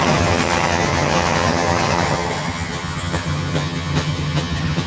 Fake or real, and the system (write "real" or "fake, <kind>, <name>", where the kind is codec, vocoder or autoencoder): fake, vocoder, HiFi-GAN